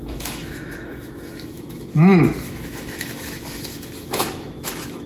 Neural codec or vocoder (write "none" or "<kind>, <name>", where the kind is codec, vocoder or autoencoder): autoencoder, DAC-VAE